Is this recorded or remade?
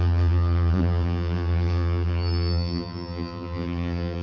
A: remade